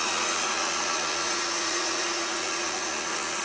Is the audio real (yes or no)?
no